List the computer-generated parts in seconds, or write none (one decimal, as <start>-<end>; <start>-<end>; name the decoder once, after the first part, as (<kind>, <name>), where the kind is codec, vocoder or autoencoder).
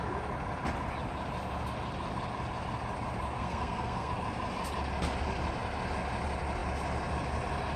3.4-4.1 (codec, SNAC)